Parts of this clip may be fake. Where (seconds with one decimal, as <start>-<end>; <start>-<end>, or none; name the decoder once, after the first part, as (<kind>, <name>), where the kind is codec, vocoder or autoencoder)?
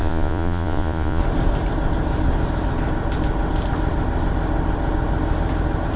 0.0-1.2 (vocoder, Vocos)